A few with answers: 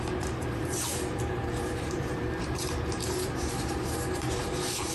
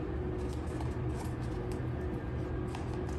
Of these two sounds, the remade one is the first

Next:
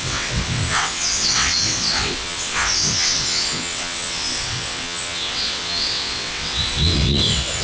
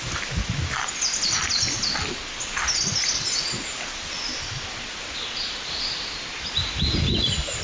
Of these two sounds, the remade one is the first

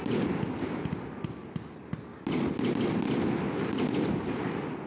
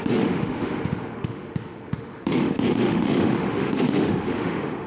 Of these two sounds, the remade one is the second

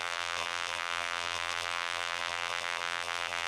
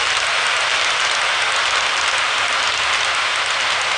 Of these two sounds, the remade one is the first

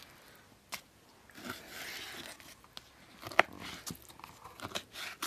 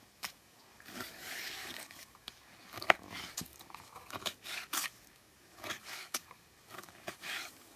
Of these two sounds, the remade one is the second